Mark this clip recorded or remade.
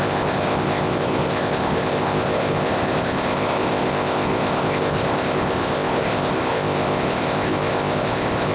remade